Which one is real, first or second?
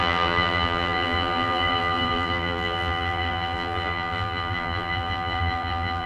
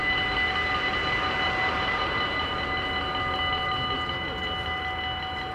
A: second